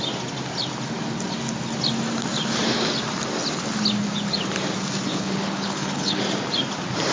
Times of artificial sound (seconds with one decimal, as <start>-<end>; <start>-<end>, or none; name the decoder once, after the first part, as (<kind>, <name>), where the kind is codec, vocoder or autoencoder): 5.1-6.2 (codec, HILCodec)